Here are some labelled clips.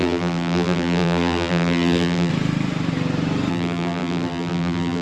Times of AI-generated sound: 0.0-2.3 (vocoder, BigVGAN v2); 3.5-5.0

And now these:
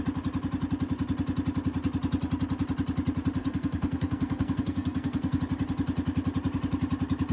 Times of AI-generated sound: 3.4-5.4 (codec, SNAC)

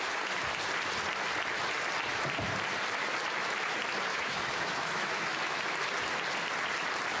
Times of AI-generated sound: 4.1-5.6 (autoencoder, DAC-VAE)

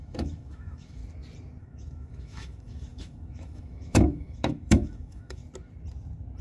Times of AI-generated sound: 0.0-1.0 (autoencoder, DAC-VAE); 1.6-5.4

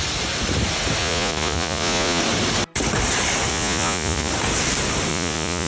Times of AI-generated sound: 1.0-2.2 (vocoder, Vocos); 3.5-4.3; 5.1-5.7

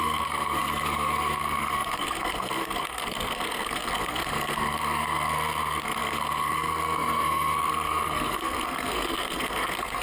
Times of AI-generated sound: 0.0-10.0 (codec, SNAC)

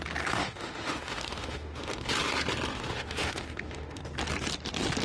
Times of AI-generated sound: 0.4-2.1 (autoencoder, DAC-VAE); 2.7-4.0